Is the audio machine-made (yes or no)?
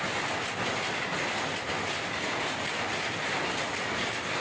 no